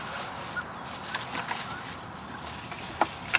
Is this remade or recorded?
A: recorded